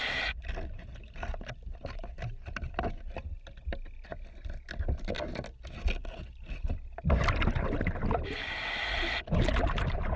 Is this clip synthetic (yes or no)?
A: no